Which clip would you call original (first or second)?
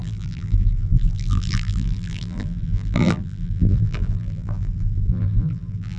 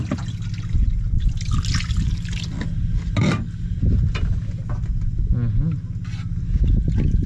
second